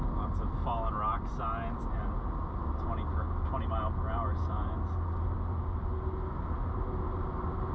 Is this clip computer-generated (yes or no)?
no